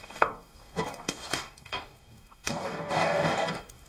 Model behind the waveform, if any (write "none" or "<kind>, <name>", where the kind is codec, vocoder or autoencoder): codec, DAC